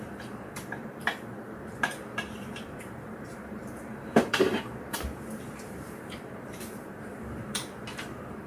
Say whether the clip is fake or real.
fake